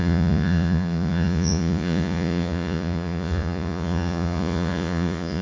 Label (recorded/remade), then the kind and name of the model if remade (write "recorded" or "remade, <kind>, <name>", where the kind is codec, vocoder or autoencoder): remade, vocoder, Vocos